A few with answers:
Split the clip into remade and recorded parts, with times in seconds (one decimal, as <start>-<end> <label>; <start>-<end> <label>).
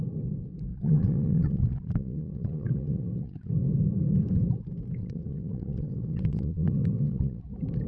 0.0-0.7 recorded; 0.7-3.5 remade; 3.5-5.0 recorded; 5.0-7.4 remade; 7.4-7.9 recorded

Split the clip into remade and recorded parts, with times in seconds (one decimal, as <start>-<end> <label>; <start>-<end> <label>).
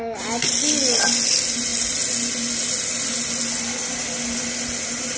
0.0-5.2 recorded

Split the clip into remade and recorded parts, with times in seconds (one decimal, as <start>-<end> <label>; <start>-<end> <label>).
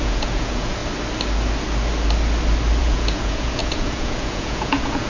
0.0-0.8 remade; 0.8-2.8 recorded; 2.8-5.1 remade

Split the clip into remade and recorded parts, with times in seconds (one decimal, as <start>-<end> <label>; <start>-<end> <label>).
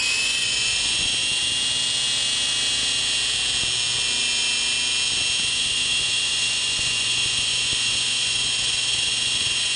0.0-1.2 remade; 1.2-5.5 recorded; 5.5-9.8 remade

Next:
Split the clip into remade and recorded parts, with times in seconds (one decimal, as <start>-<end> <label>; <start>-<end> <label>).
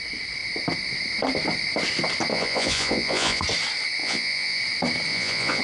0.0-2.3 recorded; 2.3-3.4 remade; 3.4-4.0 recorded; 4.0-4.6 remade; 4.6-5.1 recorded; 5.1-5.6 remade